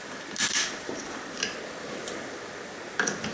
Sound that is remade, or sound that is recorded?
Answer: remade